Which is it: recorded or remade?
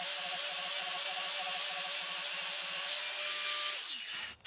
recorded